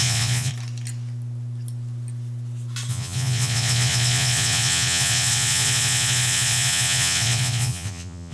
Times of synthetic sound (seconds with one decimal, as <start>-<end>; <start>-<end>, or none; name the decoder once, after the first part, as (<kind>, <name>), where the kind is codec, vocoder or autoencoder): 0.0-0.5 (vocoder, Vocos); 2.9-8.3